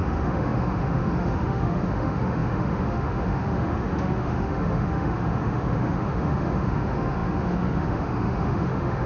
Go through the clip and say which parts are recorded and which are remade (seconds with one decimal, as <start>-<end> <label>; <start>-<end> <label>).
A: 0.0-9.1 remade